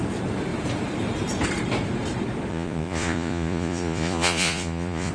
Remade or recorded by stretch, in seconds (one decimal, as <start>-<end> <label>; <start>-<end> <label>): 0.0-2.5 recorded; 2.5-5.1 remade